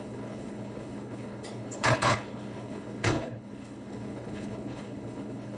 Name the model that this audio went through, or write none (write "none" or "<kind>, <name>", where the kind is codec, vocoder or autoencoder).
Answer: codec, HILCodec